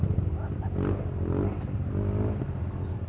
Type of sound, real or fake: fake